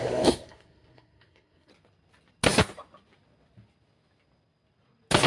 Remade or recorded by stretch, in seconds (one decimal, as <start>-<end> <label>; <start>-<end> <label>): 0.0-1.7 remade; 1.7-5.3 recorded